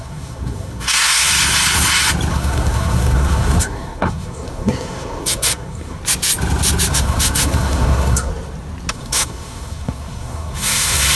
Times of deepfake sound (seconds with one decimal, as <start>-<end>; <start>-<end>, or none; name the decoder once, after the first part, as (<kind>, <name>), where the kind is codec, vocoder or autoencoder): 0.0-1.3 (codec, SNAC); 2.3-6.0; 6.9-8.3; 8.9-11.2